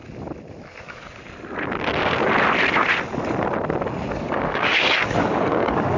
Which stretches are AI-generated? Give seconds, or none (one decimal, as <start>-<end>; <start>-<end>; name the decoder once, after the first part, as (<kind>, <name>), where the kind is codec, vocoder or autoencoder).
0.6-1.2 (codec, DAC); 4.1-6.0